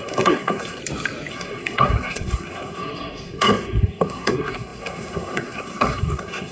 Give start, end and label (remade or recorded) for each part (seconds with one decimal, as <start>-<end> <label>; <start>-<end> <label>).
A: 0.0-0.8 remade; 0.8-1.3 recorded; 1.3-6.5 remade